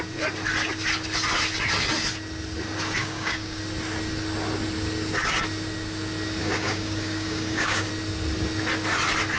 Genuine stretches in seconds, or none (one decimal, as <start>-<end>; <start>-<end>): 0.0-3.0; 3.6-6.4; 7.9-9.4